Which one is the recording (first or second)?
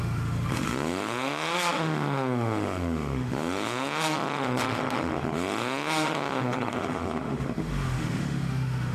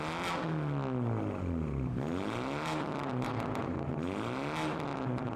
second